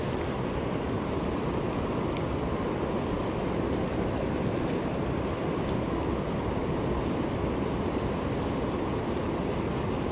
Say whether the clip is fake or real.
real